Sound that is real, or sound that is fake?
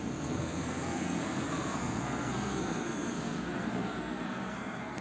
fake